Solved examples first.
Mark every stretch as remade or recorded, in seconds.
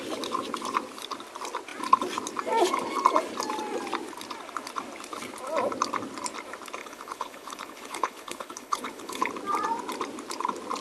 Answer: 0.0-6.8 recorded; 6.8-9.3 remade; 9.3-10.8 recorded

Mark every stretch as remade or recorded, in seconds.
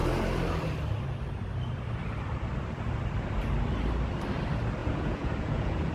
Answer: 0.0-4.8 recorded; 4.8-5.9 remade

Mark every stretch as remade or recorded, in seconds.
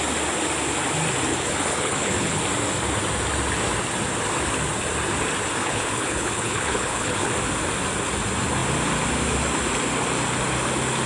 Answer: 0.0-1.3 recorded; 1.3-2.4 remade; 2.4-5.6 recorded; 5.6-7.3 remade; 7.3-11.1 recorded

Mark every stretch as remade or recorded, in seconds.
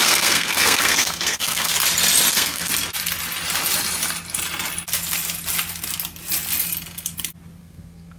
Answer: 0.0-1.7 remade; 1.7-2.3 recorded; 2.3-2.7 remade; 2.7-7.6 recorded; 7.6-8.2 remade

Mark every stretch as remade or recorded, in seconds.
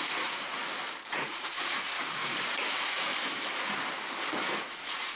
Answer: 0.0-0.6 remade; 0.6-1.1 recorded; 1.1-3.1 remade; 3.1-4.6 recorded; 4.6-5.2 remade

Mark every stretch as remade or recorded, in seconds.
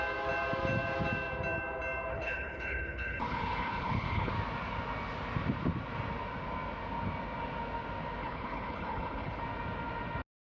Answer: 0.0-2.1 recorded; 2.1-4.3 remade; 4.3-8.2 recorded; 8.2-9.4 remade; 9.4-10.5 recorded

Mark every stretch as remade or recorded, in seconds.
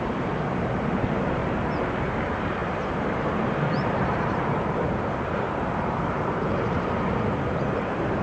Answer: 0.0-1.4 remade; 1.4-2.1 recorded; 2.1-8.2 remade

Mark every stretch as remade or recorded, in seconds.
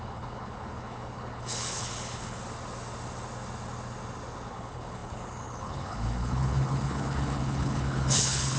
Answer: 0.0-2.4 remade; 2.4-4.5 recorded; 4.5-8.6 remade